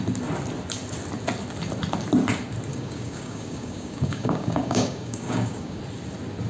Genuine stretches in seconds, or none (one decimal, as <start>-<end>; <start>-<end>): 0.0-2.7; 5.8-6.5